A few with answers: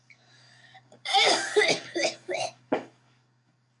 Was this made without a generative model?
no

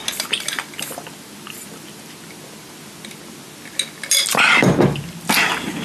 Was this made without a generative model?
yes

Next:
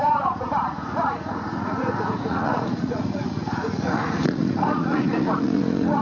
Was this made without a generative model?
no